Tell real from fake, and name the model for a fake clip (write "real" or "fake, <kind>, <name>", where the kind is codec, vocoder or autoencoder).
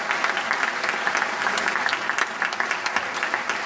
real